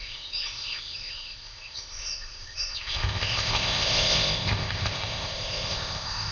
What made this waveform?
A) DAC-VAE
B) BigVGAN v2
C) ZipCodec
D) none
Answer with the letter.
C